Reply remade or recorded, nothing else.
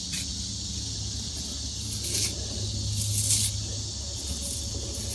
recorded